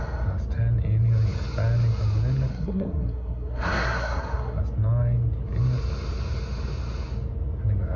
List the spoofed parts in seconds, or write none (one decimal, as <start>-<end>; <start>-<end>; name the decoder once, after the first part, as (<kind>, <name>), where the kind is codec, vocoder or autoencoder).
2.5-4.6 (codec, SNAC)